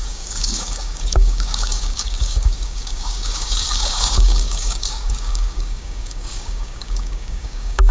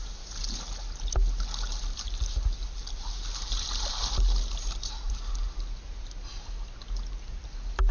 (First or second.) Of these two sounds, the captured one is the second